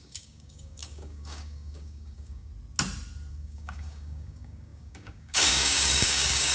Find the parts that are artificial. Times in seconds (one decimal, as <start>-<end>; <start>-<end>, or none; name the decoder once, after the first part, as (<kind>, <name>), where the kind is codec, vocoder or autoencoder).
0.0-2.5 (codec, DAC); 3.3-6.5